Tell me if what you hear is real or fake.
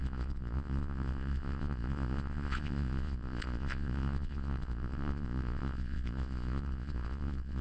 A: fake